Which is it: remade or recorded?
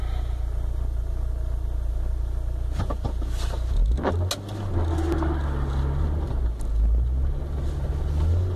recorded